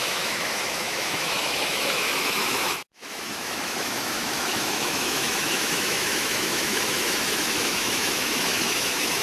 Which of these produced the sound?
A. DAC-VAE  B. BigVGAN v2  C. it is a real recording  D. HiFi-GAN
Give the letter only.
A